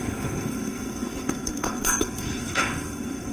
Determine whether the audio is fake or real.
fake